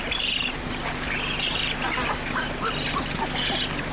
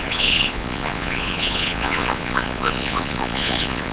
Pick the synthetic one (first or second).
second